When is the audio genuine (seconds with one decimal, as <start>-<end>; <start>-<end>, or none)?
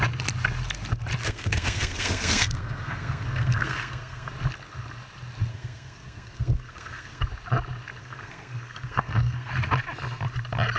0.0-1.2; 4.3-5.5; 7.2-8.0; 9.5-10.8